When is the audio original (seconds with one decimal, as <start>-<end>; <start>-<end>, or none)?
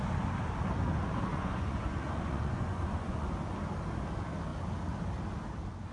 0.0-1.3; 3.3-5.9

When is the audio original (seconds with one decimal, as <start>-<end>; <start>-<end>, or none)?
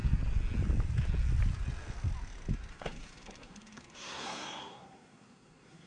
0.0-2.7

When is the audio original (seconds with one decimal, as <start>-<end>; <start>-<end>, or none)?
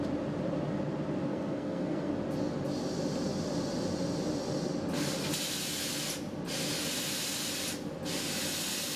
0.0-1.3; 2.1-9.0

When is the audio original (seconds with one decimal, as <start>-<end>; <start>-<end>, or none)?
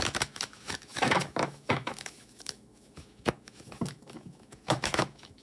none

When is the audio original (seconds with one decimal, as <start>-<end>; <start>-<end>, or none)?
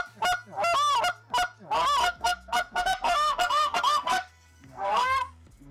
0.0-2.0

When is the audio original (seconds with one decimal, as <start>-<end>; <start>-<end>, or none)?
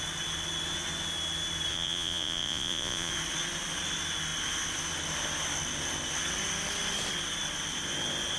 0.0-1.7; 3.1-8.4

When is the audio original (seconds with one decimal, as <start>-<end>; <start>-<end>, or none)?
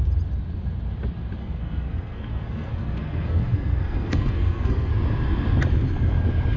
0.0-1.4; 4.9-6.6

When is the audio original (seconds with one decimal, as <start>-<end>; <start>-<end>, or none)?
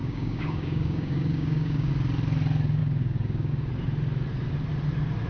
1.9-2.8; 3.7-5.3